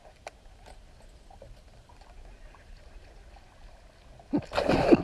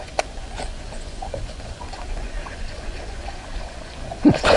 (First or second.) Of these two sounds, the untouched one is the first